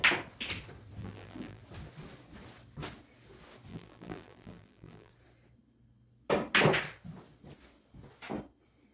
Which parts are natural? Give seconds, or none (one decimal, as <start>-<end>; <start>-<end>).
0.0-1.0; 1.6-3.7; 5.1-8.9